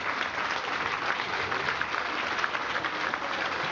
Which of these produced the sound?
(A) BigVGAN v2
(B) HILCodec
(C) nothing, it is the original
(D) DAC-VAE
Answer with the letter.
C